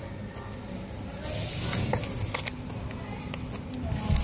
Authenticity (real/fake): real